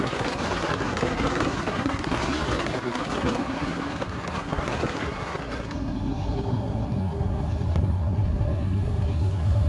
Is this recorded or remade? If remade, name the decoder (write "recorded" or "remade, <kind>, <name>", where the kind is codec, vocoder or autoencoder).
remade, codec, SNAC